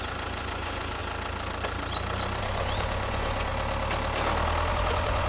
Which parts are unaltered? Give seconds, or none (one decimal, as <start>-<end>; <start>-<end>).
1.0-2.4; 3.5-4.7